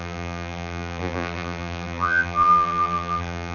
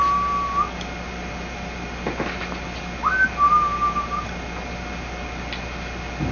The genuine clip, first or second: second